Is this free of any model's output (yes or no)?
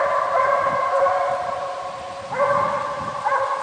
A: yes